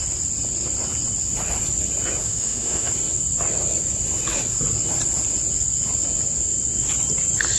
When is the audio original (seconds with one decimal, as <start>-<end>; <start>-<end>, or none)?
0.0-2.2; 2.9-7.6